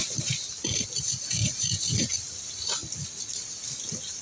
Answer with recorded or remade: recorded